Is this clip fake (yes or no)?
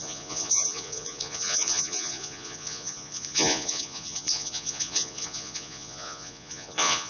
yes